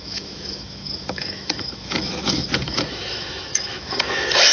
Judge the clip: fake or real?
fake